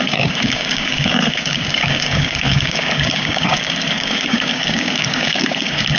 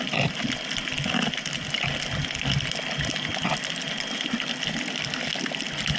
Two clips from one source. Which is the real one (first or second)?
second